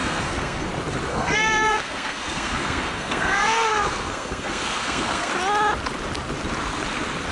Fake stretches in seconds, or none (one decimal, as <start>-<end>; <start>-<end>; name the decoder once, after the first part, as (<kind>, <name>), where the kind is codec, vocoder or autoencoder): 0.0-0.7 (codec, SNAC); 1.1-5.3

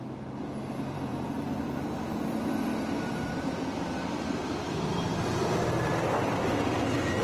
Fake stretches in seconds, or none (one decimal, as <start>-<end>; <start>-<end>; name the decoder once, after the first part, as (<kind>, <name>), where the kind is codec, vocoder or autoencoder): 0.7-7.2 (vocoder, BigVGAN v2)

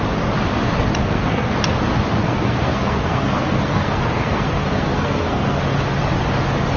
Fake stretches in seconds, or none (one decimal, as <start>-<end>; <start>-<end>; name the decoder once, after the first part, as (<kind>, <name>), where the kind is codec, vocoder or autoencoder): 1.0-1.5 (codec, SNAC); 2.2-5.6

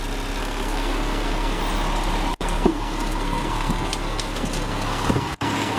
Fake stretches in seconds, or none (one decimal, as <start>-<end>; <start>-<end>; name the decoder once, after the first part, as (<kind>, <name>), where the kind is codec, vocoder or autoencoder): 0.4-1.6 (codec, SNAC); 2.3-5.8

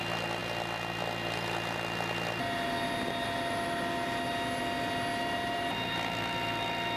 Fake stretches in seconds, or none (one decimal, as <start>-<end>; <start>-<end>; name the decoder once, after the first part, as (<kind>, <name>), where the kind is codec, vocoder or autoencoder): none

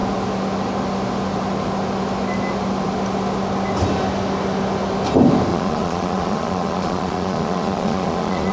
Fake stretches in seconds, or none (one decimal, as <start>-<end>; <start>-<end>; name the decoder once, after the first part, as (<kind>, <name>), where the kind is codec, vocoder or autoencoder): 5.5-8.5 (vocoder, Vocos)

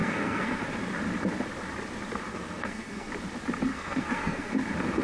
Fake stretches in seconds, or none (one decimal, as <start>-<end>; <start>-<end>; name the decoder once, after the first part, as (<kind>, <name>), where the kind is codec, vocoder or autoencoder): 0.0-0.6 (codec, SNAC); 2.3-3.1; 3.7-4.5